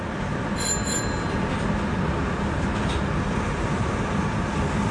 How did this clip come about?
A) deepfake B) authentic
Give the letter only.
B